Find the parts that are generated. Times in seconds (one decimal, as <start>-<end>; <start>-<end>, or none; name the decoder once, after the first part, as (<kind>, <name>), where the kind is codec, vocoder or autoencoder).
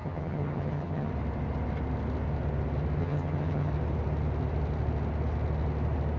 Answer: 0.0-1.1 (vocoder, HiFi-GAN); 3.0-3.7